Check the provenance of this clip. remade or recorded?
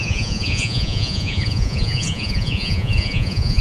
remade